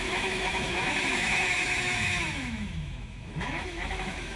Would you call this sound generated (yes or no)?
yes